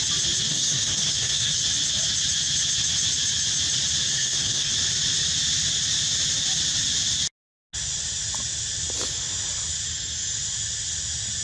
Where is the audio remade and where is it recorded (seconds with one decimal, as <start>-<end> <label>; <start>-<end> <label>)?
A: 0.0-0.5 recorded; 0.5-1.6 remade; 1.6-4.1 recorded; 4.1-4.7 remade; 4.7-11.4 recorded